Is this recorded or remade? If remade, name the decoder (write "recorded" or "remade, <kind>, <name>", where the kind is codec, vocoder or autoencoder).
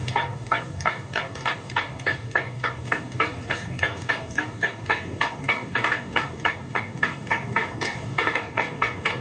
remade, codec, DAC